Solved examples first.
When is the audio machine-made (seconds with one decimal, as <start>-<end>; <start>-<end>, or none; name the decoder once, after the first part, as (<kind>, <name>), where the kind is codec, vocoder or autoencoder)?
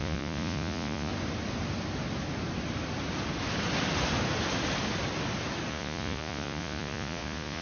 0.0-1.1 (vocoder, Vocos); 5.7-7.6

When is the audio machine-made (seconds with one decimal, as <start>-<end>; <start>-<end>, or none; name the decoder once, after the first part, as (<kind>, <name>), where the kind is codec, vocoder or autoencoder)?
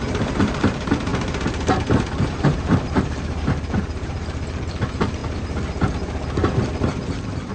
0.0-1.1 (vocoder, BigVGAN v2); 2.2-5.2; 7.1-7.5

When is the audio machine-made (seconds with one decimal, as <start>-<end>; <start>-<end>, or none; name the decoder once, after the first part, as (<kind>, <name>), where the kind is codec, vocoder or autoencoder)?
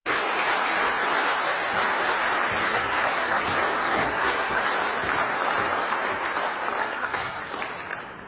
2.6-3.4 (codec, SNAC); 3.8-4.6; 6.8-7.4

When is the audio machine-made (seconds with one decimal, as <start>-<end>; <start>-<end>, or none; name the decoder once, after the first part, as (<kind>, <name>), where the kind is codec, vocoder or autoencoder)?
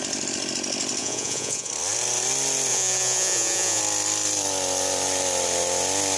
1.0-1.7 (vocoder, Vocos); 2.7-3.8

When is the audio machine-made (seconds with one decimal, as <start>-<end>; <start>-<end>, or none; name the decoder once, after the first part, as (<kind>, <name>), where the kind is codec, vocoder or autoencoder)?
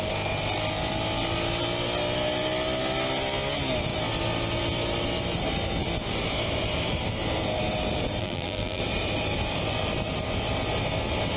8.2-8.8 (vocoder, BigVGAN v2)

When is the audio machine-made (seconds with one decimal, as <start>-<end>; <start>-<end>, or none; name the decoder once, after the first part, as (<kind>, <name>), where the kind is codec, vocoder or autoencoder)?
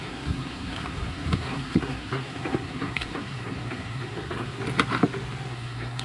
0.0-4.6 (codec, SNAC); 5.5-6.0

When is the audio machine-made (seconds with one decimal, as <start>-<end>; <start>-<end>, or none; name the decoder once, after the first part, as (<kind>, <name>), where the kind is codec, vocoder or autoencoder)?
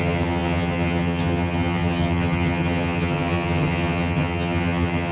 0.0-5.1 (vocoder, HiFi-GAN)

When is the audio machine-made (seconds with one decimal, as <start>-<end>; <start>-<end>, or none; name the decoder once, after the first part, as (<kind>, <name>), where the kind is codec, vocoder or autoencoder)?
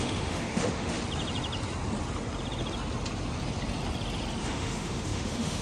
0.0-1.0 (autoencoder, DAC-VAE); 4.4-5.6